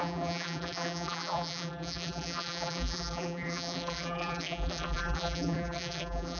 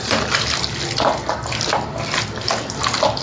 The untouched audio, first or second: second